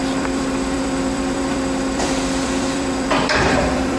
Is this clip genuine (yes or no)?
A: no